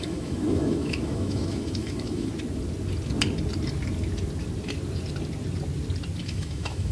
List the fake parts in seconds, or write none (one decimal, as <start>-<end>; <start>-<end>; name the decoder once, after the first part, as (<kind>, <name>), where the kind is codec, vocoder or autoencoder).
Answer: 0.0-2.3 (autoencoder, DAC-VAE); 6.2-6.9